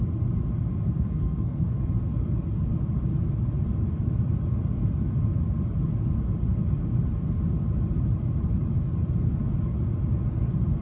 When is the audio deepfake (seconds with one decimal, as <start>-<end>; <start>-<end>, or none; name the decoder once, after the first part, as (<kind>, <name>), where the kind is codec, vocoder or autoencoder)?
0.9-1.8 (codec, SNAC)